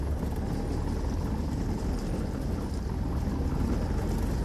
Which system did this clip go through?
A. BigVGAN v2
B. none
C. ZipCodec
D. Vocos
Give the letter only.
B